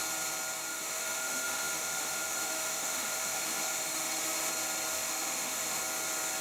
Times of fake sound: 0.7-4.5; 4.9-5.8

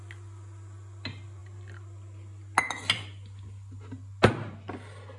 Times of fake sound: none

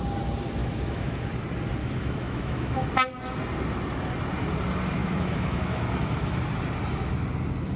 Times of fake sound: 0.6-1.3; 1.8-2.9; 5.0-6.4